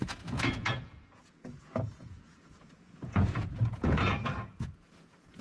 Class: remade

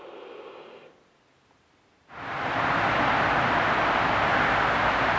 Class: recorded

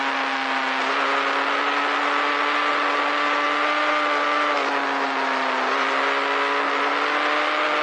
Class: recorded